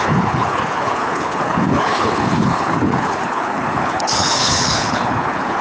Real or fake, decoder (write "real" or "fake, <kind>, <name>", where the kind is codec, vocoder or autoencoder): fake, codec, HILCodec